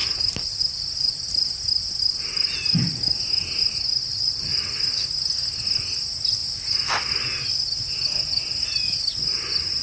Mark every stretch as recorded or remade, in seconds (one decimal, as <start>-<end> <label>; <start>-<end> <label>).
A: 0.0-0.6 remade; 0.6-4.1 recorded; 4.1-4.6 remade; 4.6-9.8 recorded